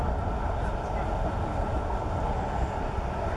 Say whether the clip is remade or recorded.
recorded